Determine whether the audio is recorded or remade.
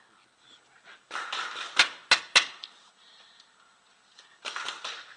recorded